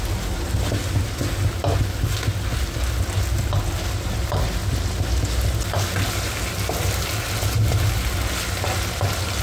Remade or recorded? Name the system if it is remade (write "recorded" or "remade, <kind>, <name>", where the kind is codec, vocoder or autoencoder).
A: recorded